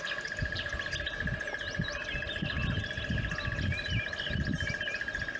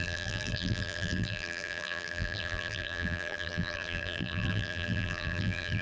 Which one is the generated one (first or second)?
second